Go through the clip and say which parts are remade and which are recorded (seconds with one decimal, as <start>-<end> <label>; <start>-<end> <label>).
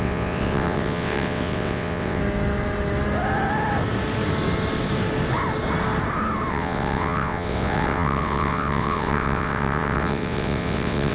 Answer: 0.0-2.2 remade; 2.2-6.5 recorded; 6.5-11.1 remade